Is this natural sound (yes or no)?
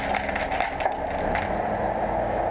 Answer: yes